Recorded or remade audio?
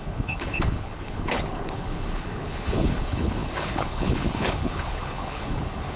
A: remade